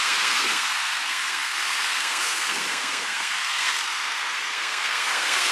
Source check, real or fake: fake